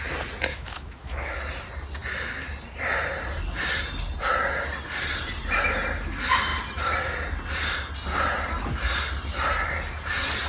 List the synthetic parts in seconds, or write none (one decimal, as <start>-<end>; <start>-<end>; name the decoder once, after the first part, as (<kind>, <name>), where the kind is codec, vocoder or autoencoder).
0.5-1.4 (autoencoder, DAC-VAE)